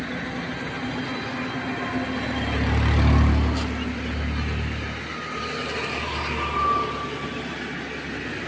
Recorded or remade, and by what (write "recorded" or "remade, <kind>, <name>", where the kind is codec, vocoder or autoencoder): recorded